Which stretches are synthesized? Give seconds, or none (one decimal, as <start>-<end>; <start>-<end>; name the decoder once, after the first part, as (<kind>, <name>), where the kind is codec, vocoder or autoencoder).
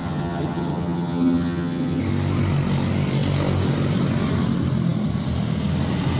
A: 0.0-2.0 (vocoder, HiFi-GAN)